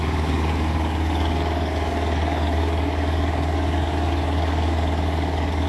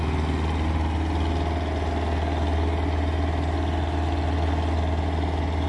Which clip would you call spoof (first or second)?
first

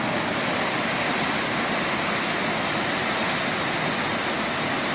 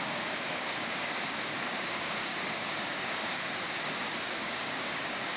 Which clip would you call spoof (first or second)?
second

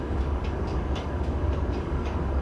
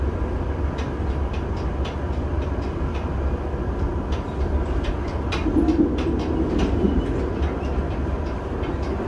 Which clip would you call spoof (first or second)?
first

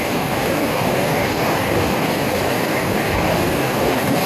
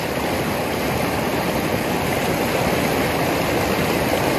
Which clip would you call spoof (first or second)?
first